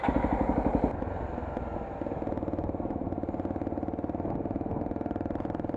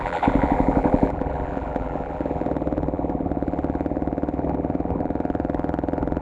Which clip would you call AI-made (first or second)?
second